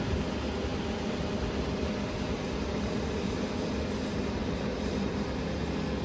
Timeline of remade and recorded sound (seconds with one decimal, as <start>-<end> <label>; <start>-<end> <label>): 0.0-0.7 recorded; 0.7-1.9 remade; 1.9-4.4 recorded; 4.4-5.4 remade; 5.4-6.0 recorded